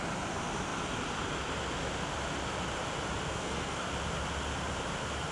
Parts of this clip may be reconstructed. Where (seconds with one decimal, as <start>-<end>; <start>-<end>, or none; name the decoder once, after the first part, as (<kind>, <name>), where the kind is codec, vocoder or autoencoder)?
3.3-3.9 (codec, SNAC)